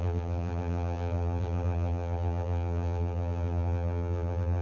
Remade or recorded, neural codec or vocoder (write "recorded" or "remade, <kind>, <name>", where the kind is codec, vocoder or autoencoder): remade, vocoder, BigVGAN v2